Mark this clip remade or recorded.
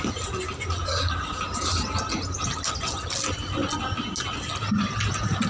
recorded